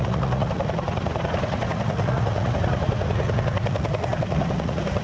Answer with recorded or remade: remade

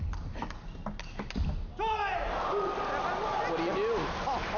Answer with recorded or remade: recorded